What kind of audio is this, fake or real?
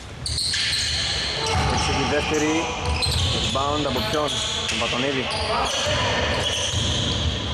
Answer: real